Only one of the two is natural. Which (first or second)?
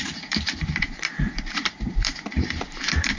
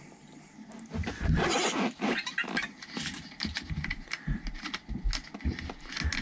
second